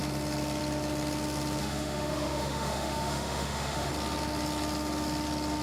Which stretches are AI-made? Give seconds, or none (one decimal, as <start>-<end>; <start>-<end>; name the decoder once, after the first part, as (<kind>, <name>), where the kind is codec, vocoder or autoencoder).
1.6-3.9 (autoencoder, DAC-VAE)